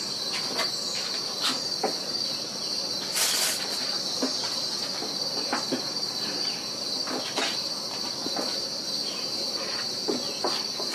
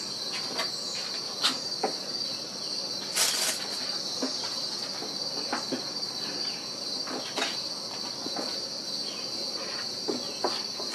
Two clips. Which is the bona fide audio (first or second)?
second